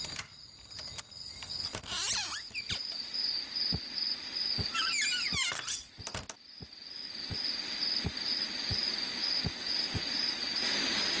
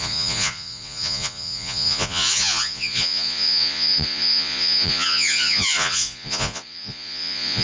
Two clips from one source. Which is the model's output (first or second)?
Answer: second